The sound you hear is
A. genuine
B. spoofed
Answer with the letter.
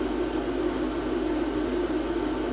A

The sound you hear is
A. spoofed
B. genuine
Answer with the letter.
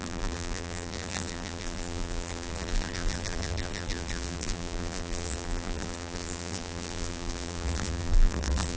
A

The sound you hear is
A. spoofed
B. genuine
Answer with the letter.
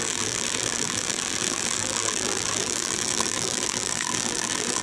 A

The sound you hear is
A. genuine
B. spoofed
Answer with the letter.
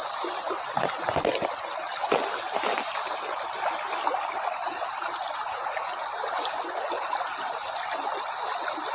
A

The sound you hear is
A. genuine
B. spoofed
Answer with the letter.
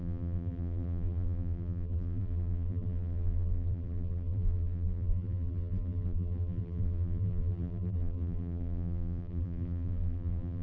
B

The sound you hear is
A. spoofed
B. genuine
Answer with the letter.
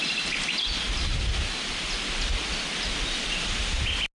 B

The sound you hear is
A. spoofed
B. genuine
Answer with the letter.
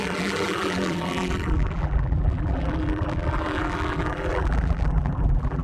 A